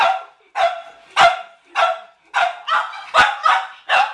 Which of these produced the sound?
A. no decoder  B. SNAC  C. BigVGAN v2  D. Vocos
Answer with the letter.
A